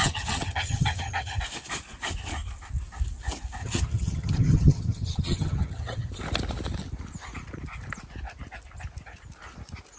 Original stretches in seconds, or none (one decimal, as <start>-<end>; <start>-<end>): 1.4-3.6; 6.1-10.0